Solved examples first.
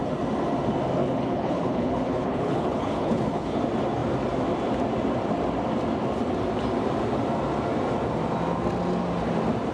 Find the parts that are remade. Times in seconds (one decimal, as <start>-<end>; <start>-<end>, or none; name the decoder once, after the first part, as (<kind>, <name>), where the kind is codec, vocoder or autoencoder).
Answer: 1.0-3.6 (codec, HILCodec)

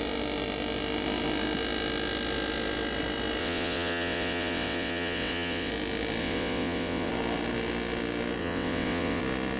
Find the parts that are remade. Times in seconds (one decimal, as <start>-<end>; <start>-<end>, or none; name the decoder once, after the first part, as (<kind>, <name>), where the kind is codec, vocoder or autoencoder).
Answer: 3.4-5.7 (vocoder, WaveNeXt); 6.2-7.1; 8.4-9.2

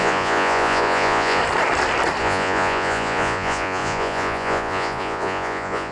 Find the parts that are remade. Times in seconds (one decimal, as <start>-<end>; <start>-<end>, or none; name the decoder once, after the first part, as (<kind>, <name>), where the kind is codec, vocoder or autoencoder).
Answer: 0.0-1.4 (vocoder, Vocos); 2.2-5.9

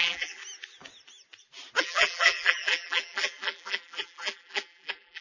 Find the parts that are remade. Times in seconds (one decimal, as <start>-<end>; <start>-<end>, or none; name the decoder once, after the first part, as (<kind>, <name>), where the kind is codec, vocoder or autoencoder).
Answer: 0.0-0.4 (vocoder, BigVGAN v2); 1.8-5.2

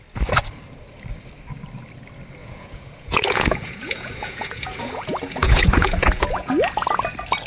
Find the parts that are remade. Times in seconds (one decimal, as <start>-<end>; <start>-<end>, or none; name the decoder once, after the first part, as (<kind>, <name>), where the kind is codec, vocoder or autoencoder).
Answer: 2.4-6.9 (vocoder, Vocos)

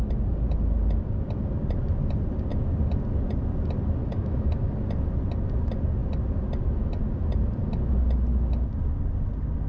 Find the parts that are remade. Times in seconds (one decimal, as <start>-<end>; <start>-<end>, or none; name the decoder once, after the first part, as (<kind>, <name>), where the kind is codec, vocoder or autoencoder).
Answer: 4.0-4.7 (autoencoder, DAC-VAE)